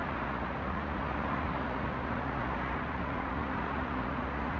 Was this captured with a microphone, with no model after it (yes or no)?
no